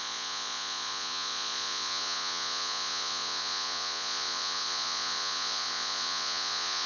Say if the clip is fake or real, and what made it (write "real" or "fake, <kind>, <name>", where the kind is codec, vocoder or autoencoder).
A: fake, vocoder, Vocos